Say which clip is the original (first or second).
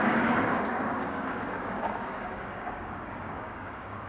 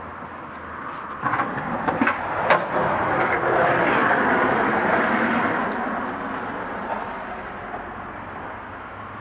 second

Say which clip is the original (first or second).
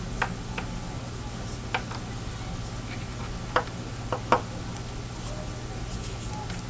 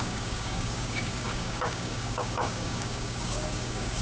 first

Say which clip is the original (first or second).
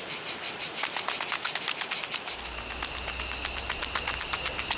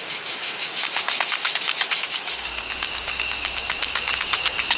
first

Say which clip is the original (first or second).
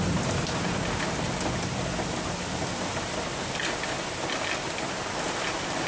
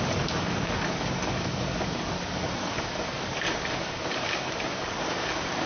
first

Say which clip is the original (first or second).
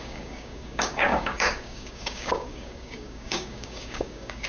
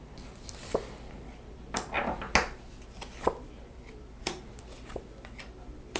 second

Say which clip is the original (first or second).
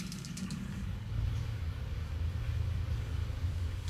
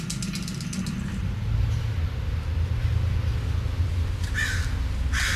second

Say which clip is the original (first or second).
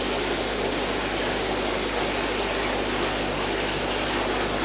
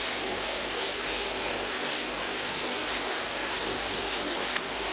first